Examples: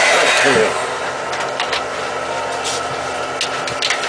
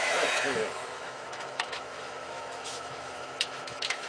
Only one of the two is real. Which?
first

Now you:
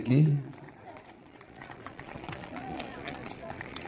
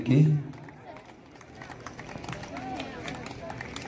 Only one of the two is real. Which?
second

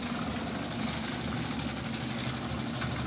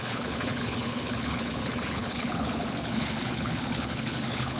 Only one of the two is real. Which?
first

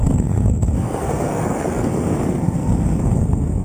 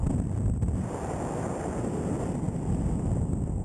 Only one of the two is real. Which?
second